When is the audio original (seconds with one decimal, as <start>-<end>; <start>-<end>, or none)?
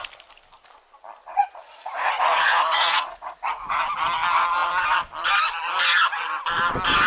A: 0.0-1.2; 3.8-7.1